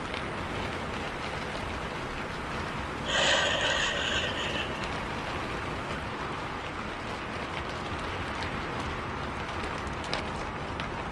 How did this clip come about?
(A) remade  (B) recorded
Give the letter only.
B